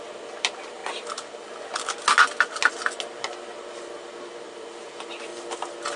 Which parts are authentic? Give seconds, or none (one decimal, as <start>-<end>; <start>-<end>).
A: 0.8-4.4; 5.3-6.0